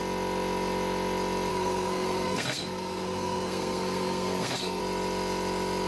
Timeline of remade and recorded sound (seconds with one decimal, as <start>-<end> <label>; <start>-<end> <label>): 0.0-1.5 recorded; 1.5-4.8 remade; 4.8-5.9 recorded